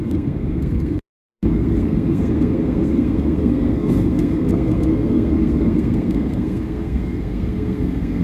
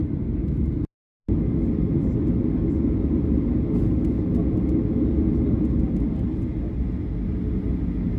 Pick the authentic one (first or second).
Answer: second